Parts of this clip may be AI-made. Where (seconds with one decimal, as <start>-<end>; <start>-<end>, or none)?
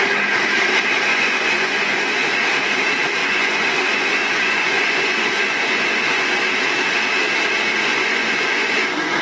1.1-2.3; 3.2-6.5; 7.9-9.2